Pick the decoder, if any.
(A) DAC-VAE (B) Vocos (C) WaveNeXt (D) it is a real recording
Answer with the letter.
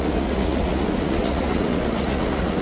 B